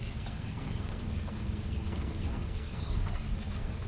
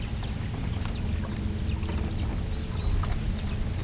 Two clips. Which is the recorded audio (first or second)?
second